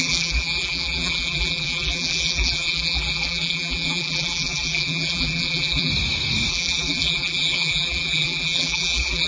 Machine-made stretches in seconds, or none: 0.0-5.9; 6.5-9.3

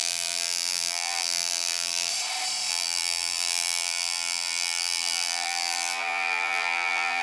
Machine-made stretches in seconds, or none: 0.0-2.1; 2.7-7.2

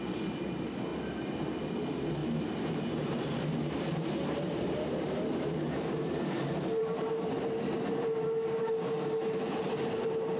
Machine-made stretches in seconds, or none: 2.2-7.1